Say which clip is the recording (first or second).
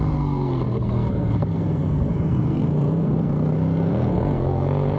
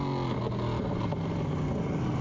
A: second